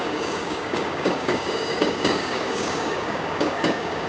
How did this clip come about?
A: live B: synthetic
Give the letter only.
B